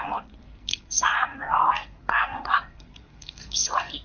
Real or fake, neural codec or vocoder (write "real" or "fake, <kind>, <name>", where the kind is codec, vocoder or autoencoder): fake, codec, SNAC